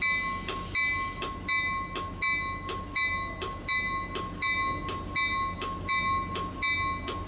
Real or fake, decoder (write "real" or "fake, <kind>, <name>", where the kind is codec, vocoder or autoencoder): real